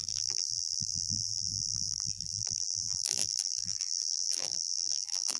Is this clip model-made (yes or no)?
yes